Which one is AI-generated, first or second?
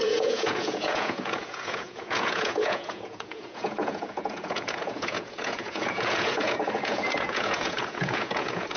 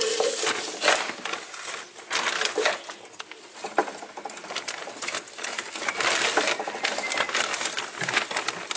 first